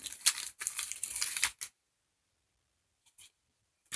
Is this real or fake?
real